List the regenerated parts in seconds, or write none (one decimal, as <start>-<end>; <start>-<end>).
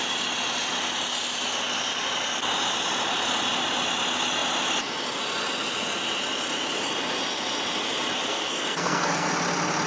8.3-9.3